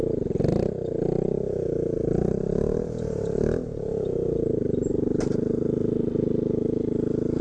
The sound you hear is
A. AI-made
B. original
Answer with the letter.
B